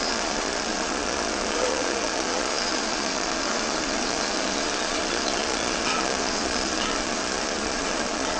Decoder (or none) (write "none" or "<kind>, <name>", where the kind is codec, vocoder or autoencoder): vocoder, Vocos